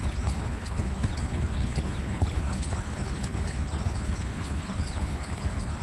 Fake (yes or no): yes